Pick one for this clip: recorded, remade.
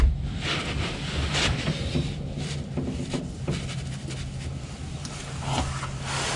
recorded